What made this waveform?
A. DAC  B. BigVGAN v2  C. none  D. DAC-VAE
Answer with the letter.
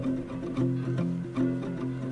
C